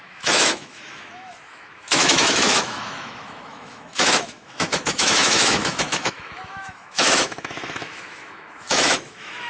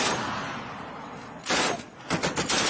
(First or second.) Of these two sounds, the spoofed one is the first